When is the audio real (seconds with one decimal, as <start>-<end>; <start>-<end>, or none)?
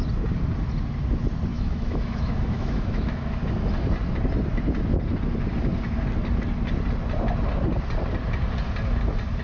0.0-1.5; 3.4-9.4